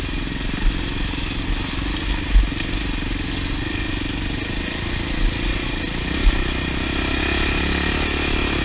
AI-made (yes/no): no